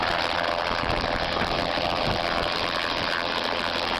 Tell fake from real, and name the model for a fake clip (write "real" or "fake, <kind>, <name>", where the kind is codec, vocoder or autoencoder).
real